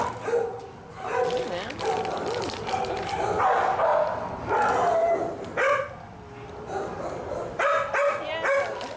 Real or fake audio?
real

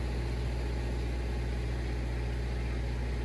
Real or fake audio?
real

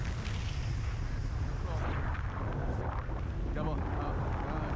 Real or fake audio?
real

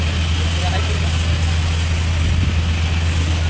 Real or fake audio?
real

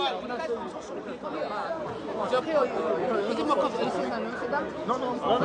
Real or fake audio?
real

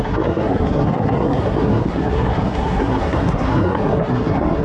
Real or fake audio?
fake